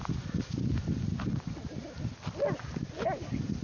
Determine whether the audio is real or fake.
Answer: real